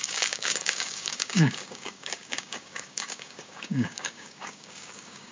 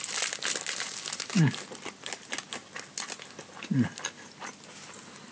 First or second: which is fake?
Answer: first